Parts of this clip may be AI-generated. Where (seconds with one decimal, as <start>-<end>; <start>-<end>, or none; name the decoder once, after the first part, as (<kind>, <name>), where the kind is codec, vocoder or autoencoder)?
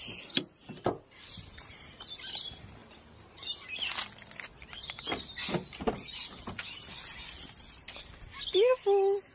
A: none